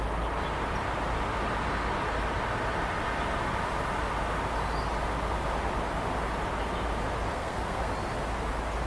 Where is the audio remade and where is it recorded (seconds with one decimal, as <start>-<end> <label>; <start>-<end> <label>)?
0.0-7.3 recorded; 7.3-7.9 remade; 7.9-8.9 recorded